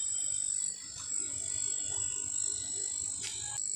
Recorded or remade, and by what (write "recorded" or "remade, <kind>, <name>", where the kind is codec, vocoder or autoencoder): recorded